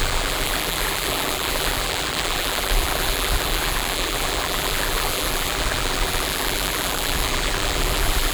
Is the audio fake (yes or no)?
yes